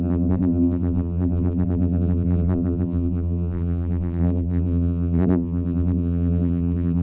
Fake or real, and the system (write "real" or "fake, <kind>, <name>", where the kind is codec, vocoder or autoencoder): fake, vocoder, BigVGAN v2